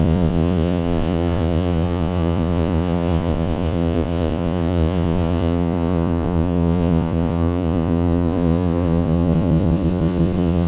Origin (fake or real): fake